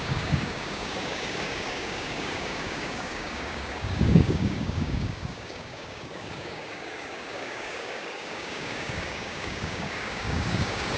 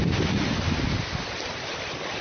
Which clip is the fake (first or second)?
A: first